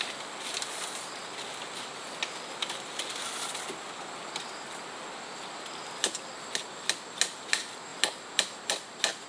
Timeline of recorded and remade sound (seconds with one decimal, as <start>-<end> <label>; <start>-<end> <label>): 0.0-7.9 recorded; 7.9-8.7 remade; 8.7-9.3 recorded